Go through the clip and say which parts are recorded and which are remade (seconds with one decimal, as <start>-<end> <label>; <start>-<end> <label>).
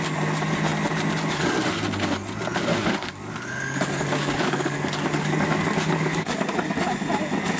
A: 0.0-2.8 recorded; 2.8-6.8 remade; 6.8-7.6 recorded